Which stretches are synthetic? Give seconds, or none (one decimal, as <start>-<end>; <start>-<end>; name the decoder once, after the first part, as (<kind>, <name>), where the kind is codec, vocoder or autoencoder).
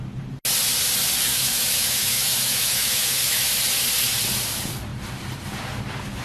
1.3-3.6 (autoencoder, DAC-VAE)